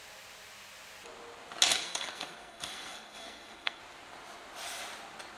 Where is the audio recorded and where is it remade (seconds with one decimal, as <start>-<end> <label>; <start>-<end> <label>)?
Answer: 0.0-1.7 recorded; 1.7-3.8 remade; 3.8-5.4 recorded